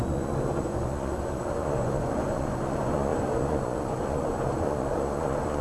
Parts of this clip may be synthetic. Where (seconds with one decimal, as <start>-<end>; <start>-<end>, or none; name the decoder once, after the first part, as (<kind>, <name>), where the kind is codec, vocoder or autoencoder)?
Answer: 0.0-5.6 (vocoder, Vocos)